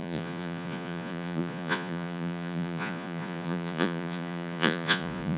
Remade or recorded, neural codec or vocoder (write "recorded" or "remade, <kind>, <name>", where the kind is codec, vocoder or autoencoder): remade, vocoder, Vocos